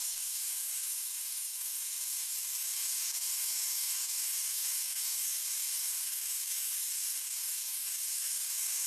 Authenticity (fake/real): fake